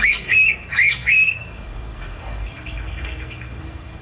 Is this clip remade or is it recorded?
remade